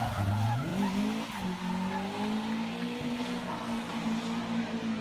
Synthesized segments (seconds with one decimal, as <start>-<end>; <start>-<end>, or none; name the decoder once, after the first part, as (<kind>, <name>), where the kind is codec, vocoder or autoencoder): 2.7-3.8 (codec, SNAC)